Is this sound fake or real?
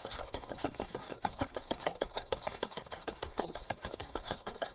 fake